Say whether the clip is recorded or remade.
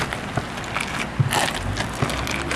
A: recorded